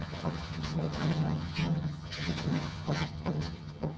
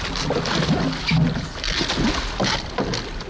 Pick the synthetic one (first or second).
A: first